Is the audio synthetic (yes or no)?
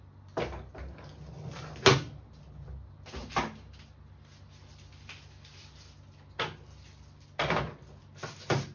no